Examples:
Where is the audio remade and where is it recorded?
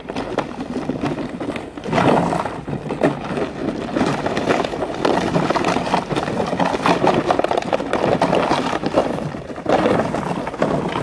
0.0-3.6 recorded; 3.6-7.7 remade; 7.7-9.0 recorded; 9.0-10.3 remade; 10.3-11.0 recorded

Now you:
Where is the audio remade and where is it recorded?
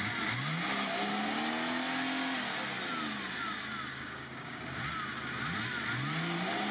0.0-3.9 recorded; 3.9-4.6 remade; 4.6-6.7 recorded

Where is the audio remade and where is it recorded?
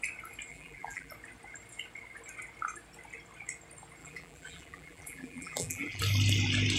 0.0-0.5 recorded; 0.5-1.1 remade; 1.1-4.0 recorded; 4.0-6.0 remade; 6.0-6.8 recorded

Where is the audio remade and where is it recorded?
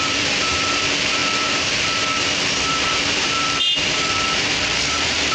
0.0-5.3 remade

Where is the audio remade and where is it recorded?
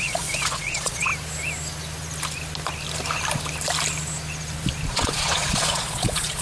0.0-1.1 remade; 1.1-4.9 recorded; 4.9-6.4 remade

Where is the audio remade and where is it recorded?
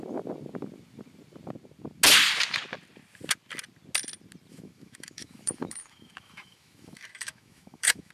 0.0-4.5 recorded; 4.5-8.1 remade